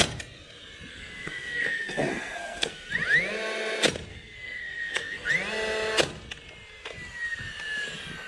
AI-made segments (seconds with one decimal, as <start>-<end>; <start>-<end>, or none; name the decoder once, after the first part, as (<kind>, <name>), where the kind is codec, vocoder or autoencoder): 0.9-2.9 (codec, SNAC); 4.1-5.3